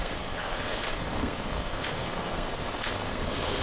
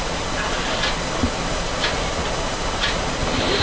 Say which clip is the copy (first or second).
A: first